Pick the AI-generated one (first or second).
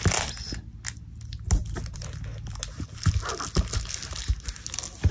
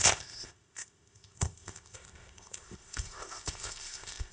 second